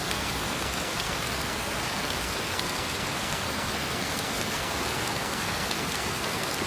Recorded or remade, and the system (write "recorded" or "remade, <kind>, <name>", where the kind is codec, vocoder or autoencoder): remade, codec, SNAC